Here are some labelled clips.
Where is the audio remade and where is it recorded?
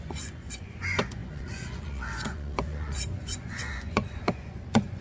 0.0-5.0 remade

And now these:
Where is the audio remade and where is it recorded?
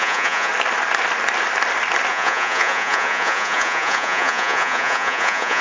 0.0-0.5 remade; 0.5-2.1 recorded; 2.1-5.6 remade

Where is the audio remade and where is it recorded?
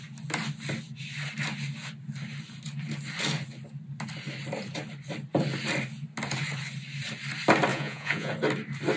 0.0-7.7 recorded; 7.7-8.3 remade; 8.3-9.0 recorded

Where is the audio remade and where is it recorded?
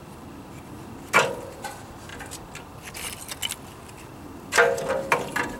0.0-5.6 recorded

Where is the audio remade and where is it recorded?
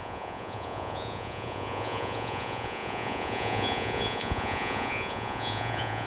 0.0-6.1 remade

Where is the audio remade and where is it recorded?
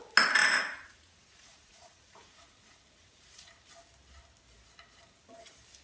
0.0-0.4 recorded; 0.4-3.5 remade; 3.5-5.8 recorded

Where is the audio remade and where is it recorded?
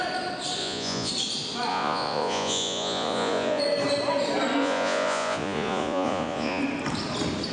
0.0-0.6 recorded; 0.6-1.1 remade; 1.1-1.7 recorded; 1.7-3.6 remade; 3.6-4.6 recorded; 4.6-6.6 remade; 6.6-7.5 recorded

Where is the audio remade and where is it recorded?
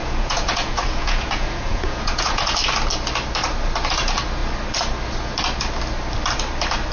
0.0-2.4 remade; 2.4-6.9 recorded